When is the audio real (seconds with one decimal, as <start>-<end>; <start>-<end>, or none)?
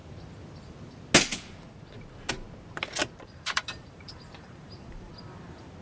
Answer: 0.0-3.0; 5.1-5.8